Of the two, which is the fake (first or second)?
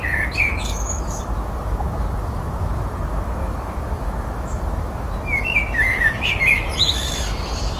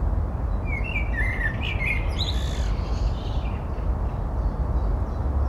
first